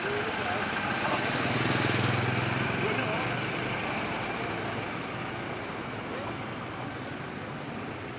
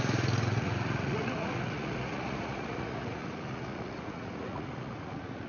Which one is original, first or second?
first